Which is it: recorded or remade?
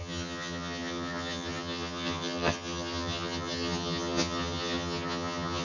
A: remade